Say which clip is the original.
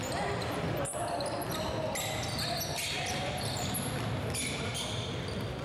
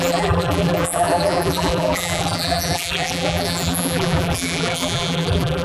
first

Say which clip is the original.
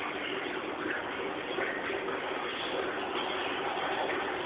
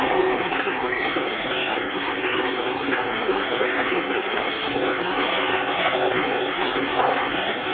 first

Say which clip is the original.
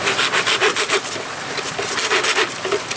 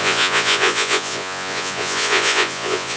first